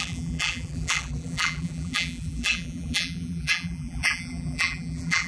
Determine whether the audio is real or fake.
fake